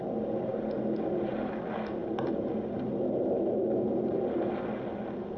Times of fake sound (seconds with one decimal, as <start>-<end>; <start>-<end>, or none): none